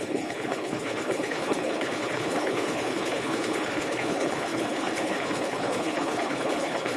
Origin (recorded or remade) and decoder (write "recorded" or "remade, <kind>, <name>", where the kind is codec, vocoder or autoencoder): remade, codec, HILCodec